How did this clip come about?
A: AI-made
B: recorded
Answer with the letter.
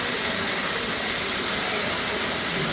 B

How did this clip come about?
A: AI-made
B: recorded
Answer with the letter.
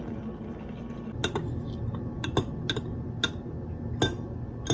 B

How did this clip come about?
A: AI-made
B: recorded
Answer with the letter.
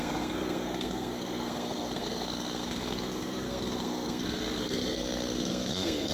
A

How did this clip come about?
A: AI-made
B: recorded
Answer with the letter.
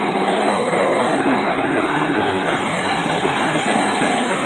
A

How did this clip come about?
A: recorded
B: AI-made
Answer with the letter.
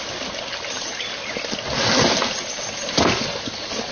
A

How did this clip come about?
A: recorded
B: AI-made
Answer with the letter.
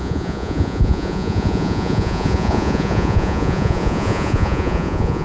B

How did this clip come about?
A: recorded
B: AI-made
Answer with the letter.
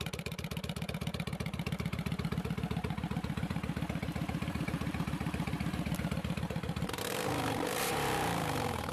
B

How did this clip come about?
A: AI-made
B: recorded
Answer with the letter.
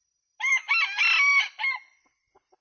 B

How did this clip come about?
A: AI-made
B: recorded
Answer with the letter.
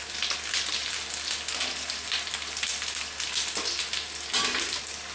B